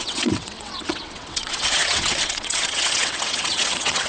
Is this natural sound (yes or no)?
no